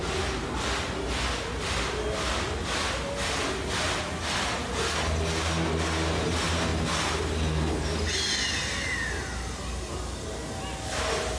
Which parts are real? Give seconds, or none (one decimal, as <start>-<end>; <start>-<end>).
0.0-11.4